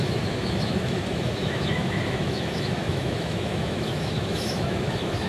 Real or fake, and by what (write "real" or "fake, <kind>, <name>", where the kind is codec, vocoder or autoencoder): fake, autoencoder, DAC-VAE